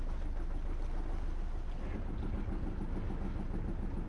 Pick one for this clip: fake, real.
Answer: real